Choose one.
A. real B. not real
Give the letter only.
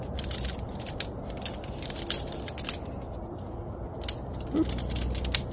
B